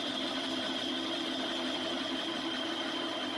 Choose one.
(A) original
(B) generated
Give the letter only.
A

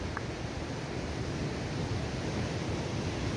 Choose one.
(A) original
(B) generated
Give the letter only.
A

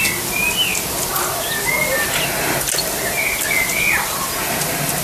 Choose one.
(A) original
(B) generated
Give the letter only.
A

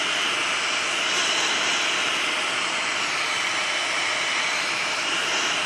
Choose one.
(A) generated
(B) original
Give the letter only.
B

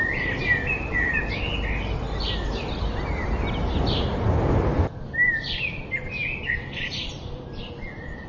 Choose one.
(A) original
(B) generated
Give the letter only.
A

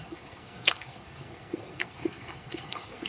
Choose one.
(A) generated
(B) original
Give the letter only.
A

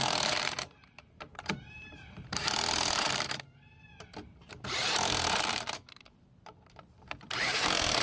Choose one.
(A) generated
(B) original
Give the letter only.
A